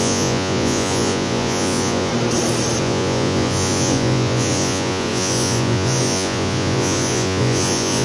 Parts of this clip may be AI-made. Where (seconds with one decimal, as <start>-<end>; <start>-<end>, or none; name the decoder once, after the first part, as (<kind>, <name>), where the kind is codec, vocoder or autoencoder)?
0.0-2.1 (vocoder, Vocos); 2.8-8.0